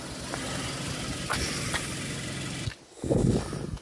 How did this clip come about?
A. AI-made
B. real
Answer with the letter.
B